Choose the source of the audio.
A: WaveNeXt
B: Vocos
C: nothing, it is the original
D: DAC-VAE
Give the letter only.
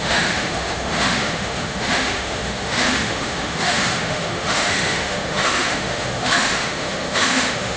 D